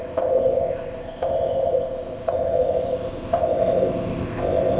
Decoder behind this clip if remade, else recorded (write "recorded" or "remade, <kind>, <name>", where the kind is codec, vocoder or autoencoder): remade, codec, ZipCodec